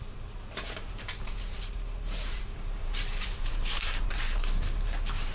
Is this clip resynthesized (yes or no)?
yes